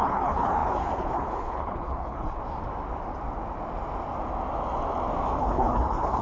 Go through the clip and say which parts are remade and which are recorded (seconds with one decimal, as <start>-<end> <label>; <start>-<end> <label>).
0.0-2.4 remade; 2.4-5.4 recorded; 5.4-6.2 remade